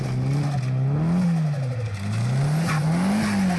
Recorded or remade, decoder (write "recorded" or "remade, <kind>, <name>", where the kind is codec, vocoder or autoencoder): recorded